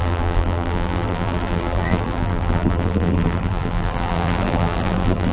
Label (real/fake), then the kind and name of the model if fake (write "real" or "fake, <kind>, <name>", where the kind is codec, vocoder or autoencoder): fake, vocoder, BigVGAN v2